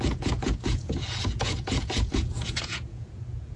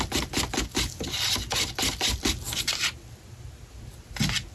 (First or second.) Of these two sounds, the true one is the second